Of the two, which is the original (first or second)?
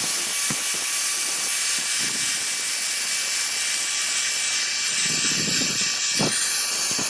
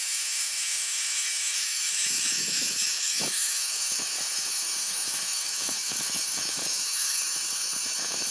first